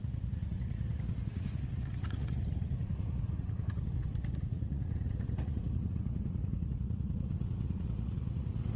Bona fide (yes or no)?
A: no